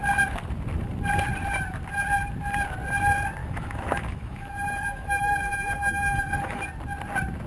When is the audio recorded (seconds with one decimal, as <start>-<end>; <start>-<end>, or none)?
0.0-3.4; 6.6-7.5